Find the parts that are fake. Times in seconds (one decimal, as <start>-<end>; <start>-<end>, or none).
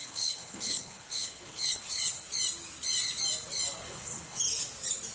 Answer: 0.0-2.3; 3.8-4.4